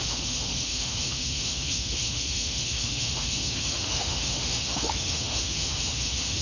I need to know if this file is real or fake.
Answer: fake